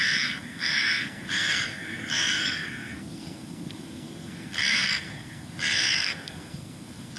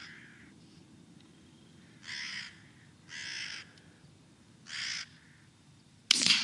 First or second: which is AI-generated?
first